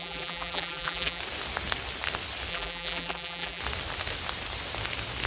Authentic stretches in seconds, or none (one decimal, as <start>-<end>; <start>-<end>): 1.2-2.5; 3.6-5.3

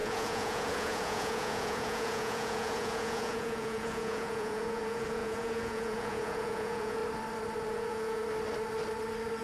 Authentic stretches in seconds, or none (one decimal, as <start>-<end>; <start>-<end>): 7.0-7.7; 8.2-9.4

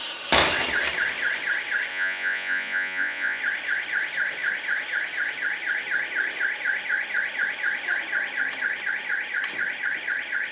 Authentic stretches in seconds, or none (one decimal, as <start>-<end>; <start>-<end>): 0.0-1.9; 3.4-10.5

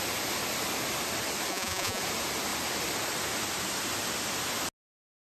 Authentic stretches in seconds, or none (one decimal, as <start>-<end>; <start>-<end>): 0.0-1.5; 2.0-5.3

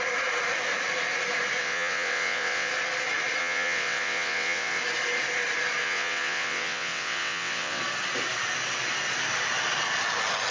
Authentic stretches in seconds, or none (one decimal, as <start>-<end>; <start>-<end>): 0.0-1.6; 2.7-3.4; 4.8-5.8; 7.8-10.5

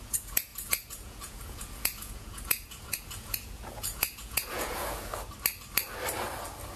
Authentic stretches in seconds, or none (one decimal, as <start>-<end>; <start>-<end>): 5.1-6.8

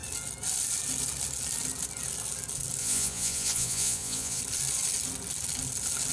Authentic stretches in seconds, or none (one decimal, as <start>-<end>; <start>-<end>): 0.0-2.8; 4.4-6.1